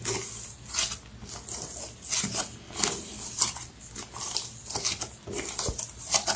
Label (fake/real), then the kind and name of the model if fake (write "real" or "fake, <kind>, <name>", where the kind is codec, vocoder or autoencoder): real